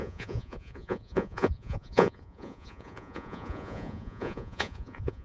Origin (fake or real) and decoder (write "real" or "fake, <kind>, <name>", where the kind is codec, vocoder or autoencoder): fake, vocoder, Vocos